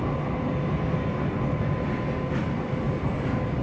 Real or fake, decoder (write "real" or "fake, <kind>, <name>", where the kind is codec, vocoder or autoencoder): real